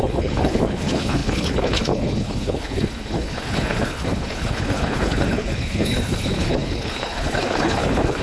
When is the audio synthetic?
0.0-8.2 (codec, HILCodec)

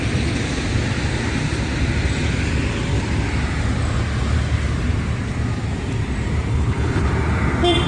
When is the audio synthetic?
6.5-7.1 (codec, HILCodec)

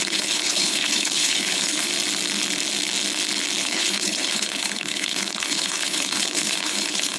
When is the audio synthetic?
0.0-1.9 (codec, HILCodec); 3.6-7.2

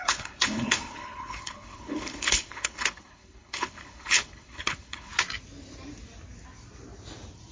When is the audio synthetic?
0.0-5.1 (codec, HILCodec)

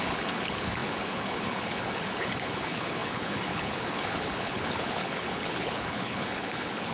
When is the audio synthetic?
0.0-6.9 (codec, HILCodec)

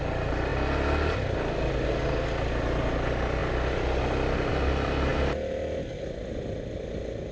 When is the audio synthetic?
none

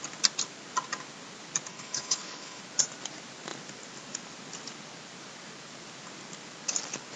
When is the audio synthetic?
1.7-2.6 (codec, HILCodec)